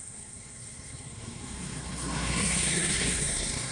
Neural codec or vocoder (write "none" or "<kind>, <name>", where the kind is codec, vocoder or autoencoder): codec, SNAC